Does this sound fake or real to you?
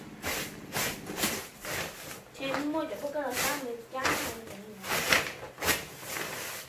real